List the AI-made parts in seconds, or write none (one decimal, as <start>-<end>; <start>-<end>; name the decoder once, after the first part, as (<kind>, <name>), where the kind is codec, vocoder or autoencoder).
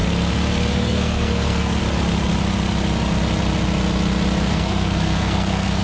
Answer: 0.7-1.8 (codec, SNAC); 4.5-5.8